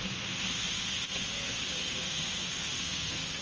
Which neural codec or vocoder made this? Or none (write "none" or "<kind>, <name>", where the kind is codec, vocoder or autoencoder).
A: codec, SNAC